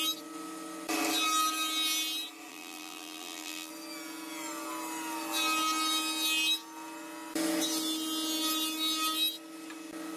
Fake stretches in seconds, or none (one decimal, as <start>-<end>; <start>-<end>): 2.5-3.7